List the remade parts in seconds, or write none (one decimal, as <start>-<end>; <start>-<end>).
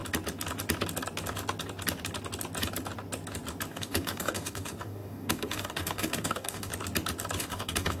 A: 3.7-6.7; 7.4-8.0